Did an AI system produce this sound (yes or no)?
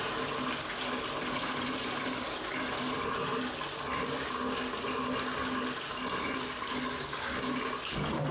no